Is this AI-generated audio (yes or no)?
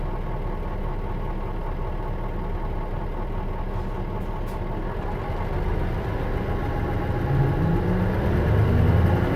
no